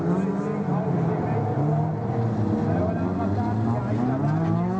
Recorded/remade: recorded